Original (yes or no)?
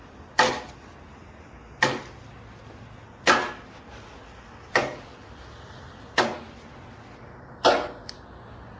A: yes